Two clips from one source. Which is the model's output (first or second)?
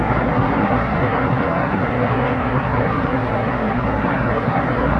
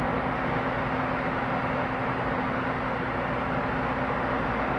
first